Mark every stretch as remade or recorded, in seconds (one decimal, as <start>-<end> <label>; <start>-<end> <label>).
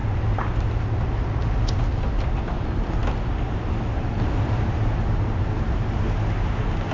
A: 0.0-6.9 recorded